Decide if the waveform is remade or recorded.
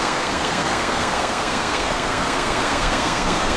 remade